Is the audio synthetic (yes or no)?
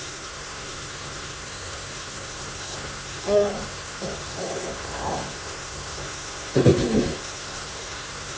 yes